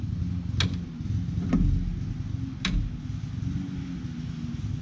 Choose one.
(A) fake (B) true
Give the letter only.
B